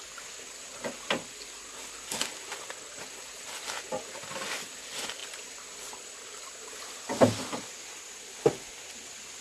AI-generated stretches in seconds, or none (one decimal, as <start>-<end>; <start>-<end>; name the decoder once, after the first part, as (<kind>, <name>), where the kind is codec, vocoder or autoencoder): none